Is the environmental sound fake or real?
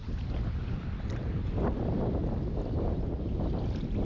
real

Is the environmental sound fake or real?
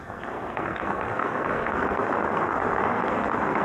fake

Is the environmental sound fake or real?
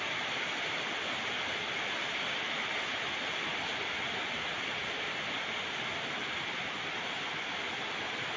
real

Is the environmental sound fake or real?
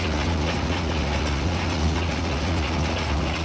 fake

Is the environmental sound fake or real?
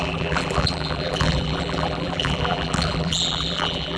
fake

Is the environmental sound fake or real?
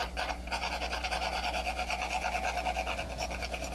real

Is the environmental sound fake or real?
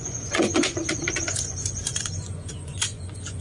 fake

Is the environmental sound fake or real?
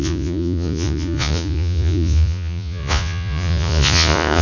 fake